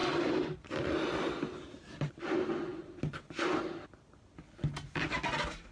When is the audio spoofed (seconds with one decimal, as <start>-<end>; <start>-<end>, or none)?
none

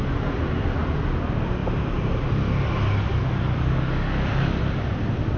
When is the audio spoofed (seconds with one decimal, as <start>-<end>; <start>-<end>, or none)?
3.1-4.3

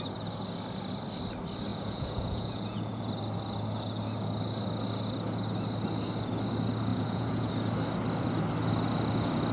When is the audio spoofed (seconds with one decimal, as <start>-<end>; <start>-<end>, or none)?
1.7-3.1; 6.9-7.5

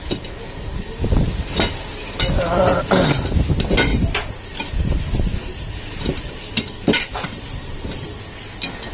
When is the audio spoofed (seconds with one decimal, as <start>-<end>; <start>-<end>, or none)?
3.9-8.2

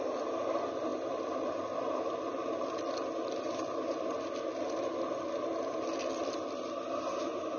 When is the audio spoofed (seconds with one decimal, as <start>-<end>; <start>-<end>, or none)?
none

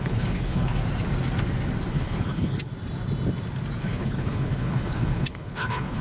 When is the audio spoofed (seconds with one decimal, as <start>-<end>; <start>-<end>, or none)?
0.0-0.8; 1.9-2.7; 3.8-6.0